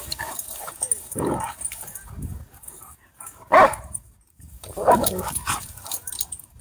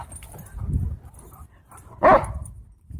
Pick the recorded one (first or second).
second